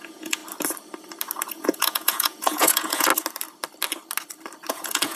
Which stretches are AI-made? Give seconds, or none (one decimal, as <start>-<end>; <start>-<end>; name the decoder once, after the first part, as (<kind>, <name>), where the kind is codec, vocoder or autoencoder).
0.0-0.4 (vocoder, Vocos); 1.5-3.1; 4.7-5.2